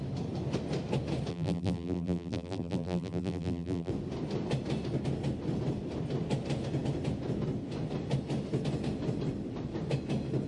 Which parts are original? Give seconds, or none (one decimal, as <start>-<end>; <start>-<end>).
0.0-1.3; 3.9-10.5